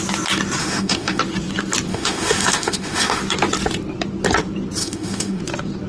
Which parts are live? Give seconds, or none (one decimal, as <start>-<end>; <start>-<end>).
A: 0.0-0.6; 1.2-1.9; 3.2-4.8; 5.4-5.9